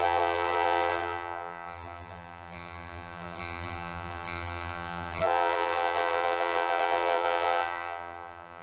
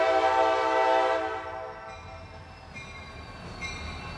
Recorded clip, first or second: second